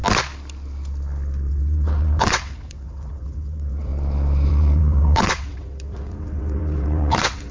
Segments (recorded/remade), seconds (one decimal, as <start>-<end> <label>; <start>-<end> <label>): 0.0-1.5 recorded; 1.5-3.9 remade; 3.9-4.5 recorded; 4.5-7.5 remade